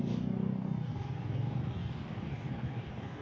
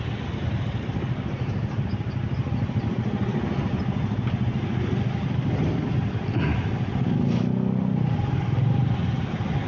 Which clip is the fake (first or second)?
first